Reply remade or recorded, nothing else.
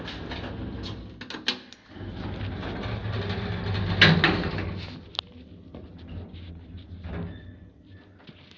recorded